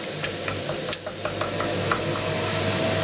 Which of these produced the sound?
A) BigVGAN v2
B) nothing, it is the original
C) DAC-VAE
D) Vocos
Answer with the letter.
B